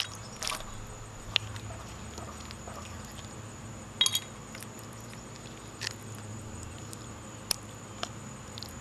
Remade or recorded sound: recorded